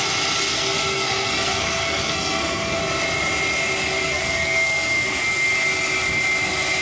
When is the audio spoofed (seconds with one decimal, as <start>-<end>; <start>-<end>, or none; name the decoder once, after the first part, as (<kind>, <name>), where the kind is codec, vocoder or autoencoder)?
0.5-2.8 (codec, SNAC); 4.0-5.5